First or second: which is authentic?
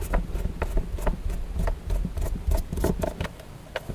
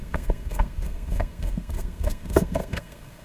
first